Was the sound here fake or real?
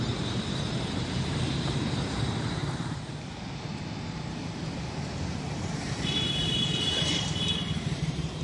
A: fake